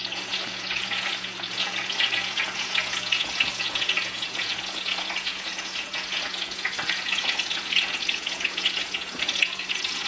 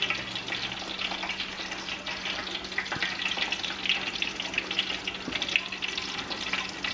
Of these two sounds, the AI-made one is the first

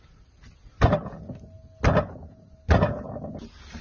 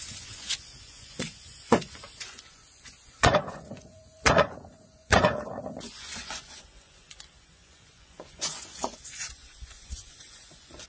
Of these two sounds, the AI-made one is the second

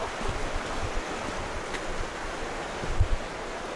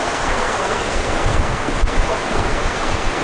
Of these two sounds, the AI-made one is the second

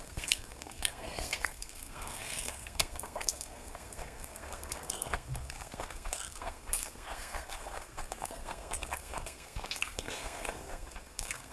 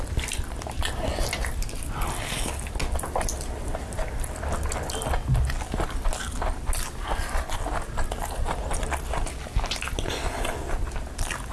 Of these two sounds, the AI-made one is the first